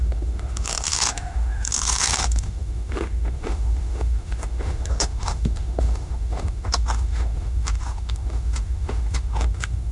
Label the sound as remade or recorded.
remade